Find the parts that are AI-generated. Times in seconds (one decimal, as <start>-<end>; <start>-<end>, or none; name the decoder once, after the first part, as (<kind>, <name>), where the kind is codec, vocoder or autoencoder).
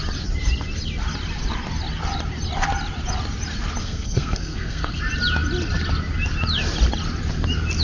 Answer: 3.8-5.0 (codec, SNAC)